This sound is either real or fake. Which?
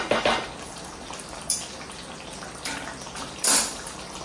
real